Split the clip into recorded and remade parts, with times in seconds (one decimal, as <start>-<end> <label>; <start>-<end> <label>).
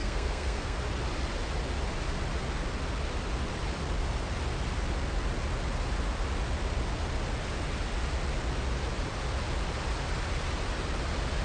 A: 0.0-0.8 remade; 0.8-11.4 recorded